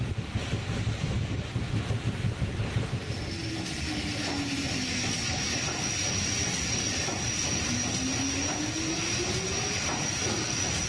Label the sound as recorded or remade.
recorded